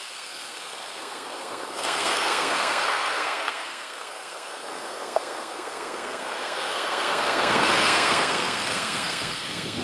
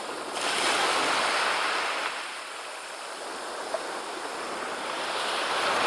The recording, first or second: second